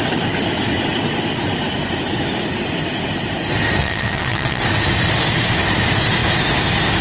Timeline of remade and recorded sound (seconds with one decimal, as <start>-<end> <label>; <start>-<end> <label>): 0.0-3.8 recorded; 3.8-4.6 remade; 4.6-7.0 recorded